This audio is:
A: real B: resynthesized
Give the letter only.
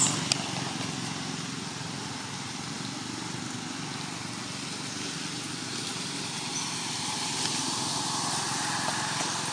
A